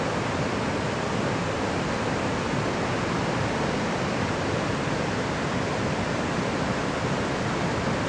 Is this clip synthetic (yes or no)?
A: no